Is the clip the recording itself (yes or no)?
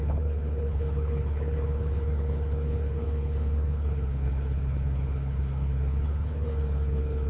no